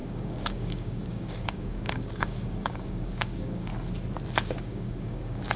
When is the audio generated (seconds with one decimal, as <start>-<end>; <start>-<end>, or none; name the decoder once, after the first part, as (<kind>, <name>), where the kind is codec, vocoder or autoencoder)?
0.0-3.7 (codec, DAC); 4.6-5.6